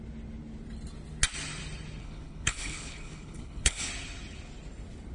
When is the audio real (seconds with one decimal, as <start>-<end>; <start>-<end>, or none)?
0.0-2.0; 3.9-5.1